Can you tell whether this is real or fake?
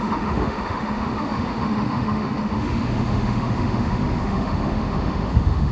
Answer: fake